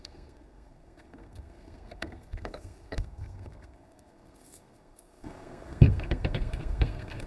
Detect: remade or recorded remade